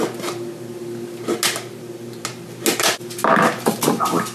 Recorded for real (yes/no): yes